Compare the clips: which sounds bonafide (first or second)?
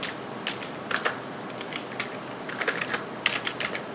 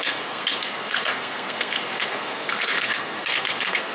first